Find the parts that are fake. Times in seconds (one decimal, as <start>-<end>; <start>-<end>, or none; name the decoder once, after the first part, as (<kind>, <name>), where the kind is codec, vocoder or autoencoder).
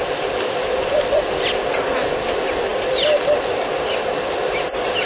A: none